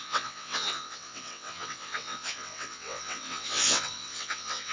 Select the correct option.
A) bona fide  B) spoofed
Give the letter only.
B